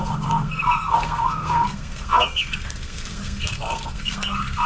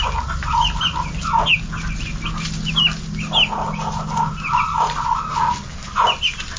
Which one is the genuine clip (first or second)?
second